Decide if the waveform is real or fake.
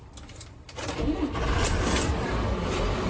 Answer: real